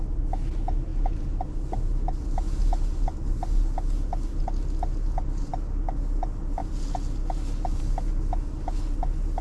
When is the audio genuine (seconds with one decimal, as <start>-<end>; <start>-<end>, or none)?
0.0-9.4